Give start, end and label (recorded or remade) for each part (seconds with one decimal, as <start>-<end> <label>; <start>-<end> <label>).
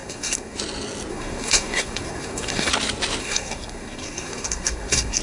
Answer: 0.0-0.6 remade; 0.6-1.1 recorded; 1.1-2.7 remade; 2.7-3.2 recorded; 3.2-5.2 remade